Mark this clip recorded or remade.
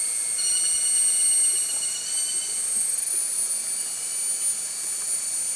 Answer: recorded